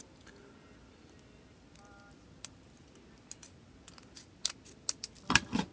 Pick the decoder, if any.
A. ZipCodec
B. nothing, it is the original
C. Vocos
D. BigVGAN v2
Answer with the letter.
B